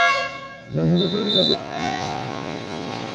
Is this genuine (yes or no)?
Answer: no